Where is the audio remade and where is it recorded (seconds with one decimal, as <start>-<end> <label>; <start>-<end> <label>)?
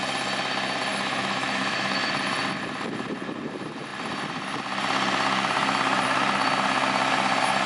0.0-0.9 recorded; 0.9-2.1 remade; 2.1-7.7 recorded